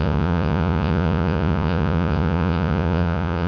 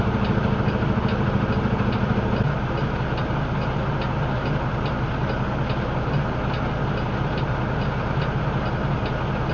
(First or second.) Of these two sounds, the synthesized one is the first